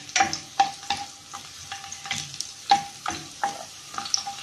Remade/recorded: recorded